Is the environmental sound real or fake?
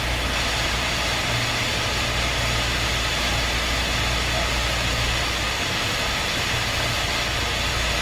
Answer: real